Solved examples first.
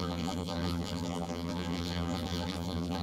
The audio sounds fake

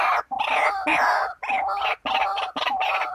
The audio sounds real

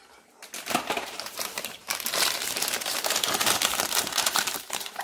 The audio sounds fake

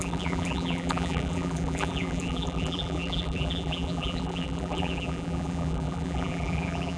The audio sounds fake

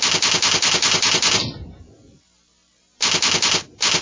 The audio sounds real